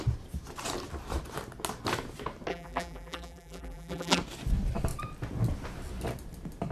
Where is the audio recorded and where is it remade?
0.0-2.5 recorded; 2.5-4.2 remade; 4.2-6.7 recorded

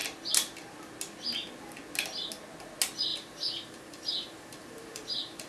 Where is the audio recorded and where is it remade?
0.0-3.1 recorded; 3.1-5.5 remade

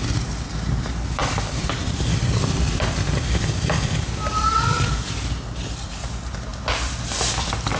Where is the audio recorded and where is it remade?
0.0-1.2 recorded; 1.2-5.9 remade; 5.9-6.5 recorded; 6.5-7.8 remade

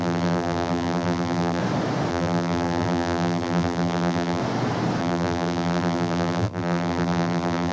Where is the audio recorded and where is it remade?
0.0-1.6 remade; 1.6-2.1 recorded; 2.1-4.4 remade; 4.4-5.0 recorded; 5.0-7.7 remade

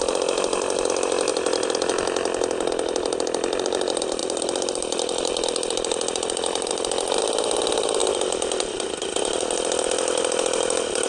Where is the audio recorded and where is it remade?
0.0-8.0 remade; 8.0-8.6 recorded; 8.6-11.1 remade

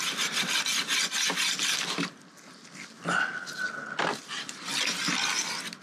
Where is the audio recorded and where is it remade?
0.0-5.8 recorded

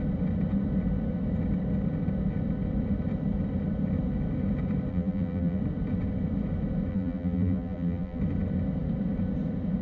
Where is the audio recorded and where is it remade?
0.0-4.9 recorded; 4.9-5.6 remade; 5.6-6.9 recorded; 6.9-8.2 remade; 8.2-9.8 recorded

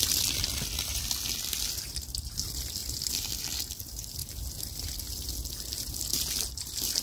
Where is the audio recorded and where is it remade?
0.0-2.8 remade; 2.8-3.7 recorded; 3.7-4.2 remade; 4.2-6.5 recorded; 6.5-7.0 remade